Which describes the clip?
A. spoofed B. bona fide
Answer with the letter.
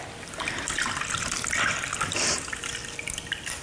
B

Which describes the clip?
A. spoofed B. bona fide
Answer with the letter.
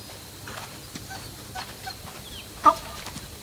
B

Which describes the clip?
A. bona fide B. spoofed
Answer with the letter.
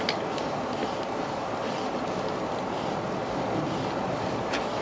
A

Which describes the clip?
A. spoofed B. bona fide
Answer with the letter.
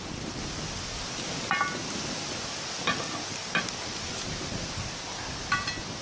B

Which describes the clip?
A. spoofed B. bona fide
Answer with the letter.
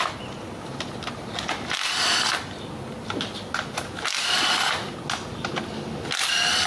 B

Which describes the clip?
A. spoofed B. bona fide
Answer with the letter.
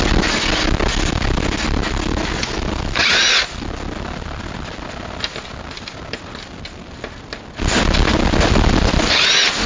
B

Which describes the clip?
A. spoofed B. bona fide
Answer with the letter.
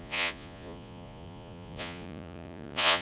A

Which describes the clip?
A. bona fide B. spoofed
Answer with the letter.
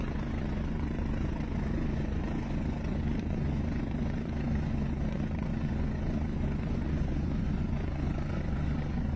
B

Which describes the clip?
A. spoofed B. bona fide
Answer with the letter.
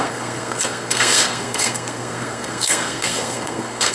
A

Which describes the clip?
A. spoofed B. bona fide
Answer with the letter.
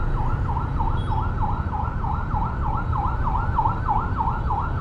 B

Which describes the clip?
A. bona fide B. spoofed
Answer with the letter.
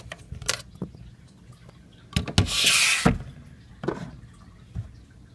A